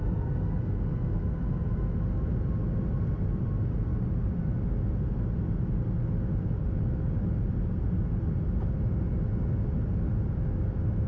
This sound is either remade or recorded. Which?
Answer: recorded